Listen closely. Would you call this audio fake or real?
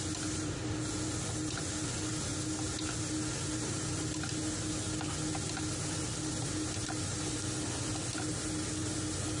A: real